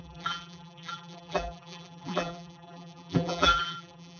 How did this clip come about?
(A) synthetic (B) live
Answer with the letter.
A